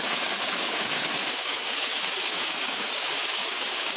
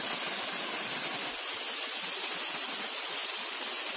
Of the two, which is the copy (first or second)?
first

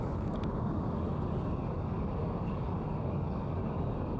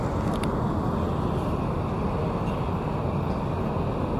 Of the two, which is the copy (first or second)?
first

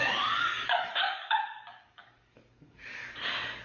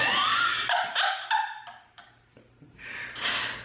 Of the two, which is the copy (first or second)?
first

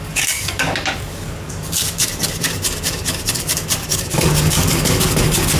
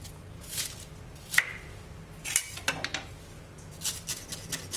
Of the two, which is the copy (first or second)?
first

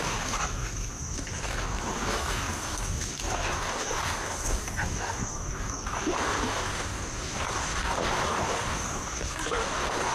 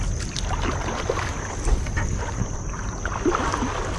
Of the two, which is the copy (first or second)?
first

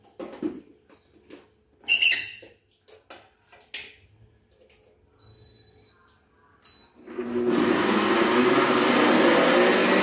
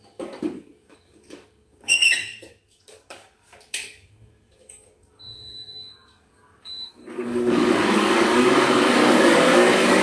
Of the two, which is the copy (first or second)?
second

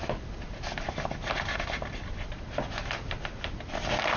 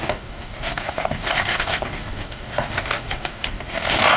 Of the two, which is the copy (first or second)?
second